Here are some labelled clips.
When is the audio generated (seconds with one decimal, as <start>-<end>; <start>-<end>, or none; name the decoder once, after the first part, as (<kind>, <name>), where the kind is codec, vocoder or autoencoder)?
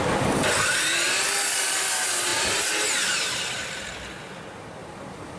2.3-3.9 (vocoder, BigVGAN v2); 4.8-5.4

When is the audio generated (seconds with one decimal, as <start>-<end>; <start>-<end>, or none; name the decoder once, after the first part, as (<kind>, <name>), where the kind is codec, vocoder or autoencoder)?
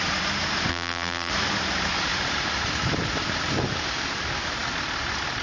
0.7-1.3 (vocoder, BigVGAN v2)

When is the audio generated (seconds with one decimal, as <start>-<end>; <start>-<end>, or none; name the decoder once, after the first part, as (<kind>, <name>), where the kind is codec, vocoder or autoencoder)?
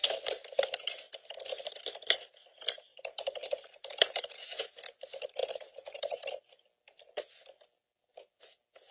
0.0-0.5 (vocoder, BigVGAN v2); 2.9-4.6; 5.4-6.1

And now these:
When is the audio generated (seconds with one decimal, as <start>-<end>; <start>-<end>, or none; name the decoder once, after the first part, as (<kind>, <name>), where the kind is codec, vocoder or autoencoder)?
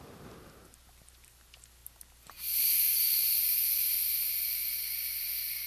0.0-5.7 (vocoder, BigVGAN v2)